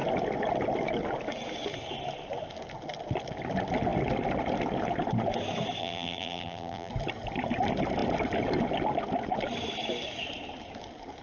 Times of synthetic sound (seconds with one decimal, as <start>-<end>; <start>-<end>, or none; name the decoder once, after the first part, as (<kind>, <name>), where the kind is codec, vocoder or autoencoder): 5.8-6.9 (vocoder, BigVGAN v2)